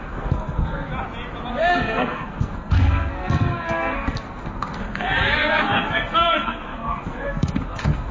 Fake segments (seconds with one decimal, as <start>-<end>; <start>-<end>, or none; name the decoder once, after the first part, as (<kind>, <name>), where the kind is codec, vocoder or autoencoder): 0.0-0.9 (codec, SNAC); 1.5-8.1